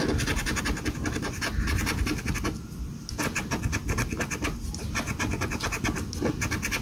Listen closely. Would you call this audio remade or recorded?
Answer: recorded